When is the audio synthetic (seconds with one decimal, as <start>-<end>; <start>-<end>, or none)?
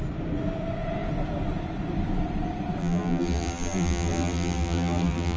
2.8-5.4